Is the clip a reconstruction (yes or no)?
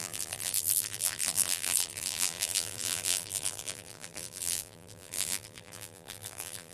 yes